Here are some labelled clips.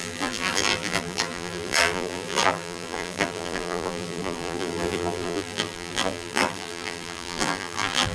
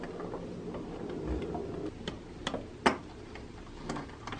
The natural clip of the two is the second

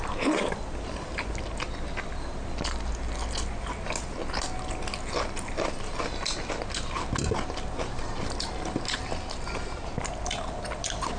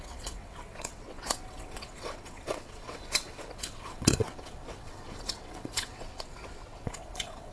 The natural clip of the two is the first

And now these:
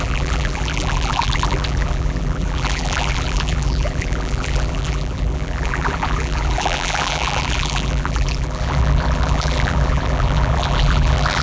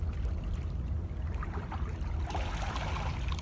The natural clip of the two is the second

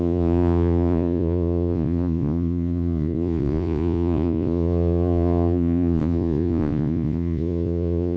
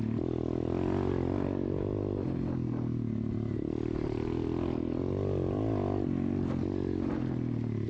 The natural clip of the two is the second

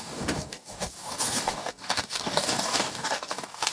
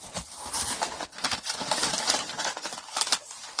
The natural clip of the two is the second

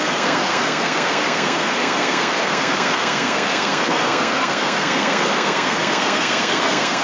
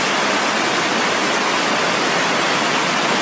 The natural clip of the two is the second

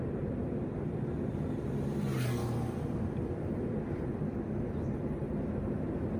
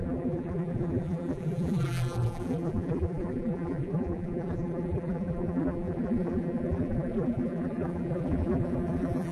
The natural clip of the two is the first